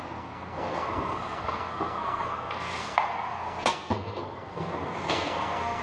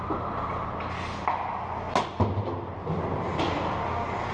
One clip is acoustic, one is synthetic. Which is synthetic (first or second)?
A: first